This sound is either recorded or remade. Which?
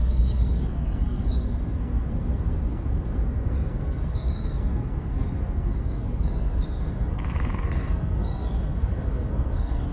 remade